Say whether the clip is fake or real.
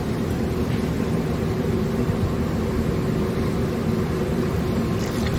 fake